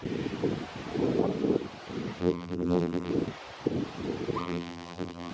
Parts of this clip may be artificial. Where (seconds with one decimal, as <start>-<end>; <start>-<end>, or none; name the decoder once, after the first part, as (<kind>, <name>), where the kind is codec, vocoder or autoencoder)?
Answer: 2.2-3.1 (vocoder, BigVGAN v2); 4.4-5.3